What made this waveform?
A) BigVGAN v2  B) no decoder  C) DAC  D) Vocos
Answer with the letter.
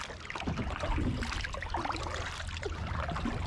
B